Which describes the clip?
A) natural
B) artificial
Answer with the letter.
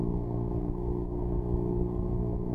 B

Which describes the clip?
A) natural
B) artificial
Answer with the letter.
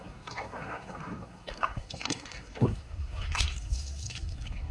B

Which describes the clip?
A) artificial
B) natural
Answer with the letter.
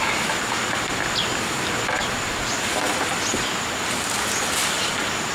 B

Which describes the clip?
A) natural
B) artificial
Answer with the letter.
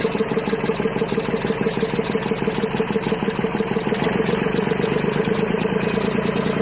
A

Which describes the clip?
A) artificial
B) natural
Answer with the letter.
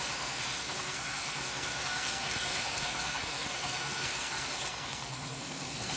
A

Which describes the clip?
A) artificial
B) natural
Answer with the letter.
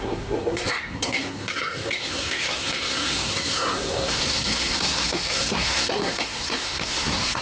A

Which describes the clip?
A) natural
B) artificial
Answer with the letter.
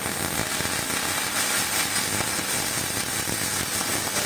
A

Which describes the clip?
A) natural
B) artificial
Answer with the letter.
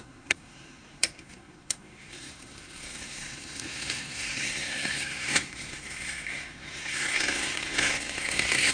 B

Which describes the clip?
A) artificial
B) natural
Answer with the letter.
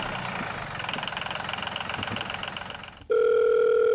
B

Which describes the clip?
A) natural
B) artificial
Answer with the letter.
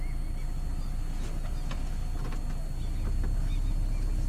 A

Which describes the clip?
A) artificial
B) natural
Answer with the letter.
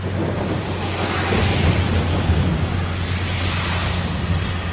B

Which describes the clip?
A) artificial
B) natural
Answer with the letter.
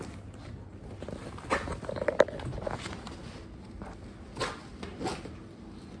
B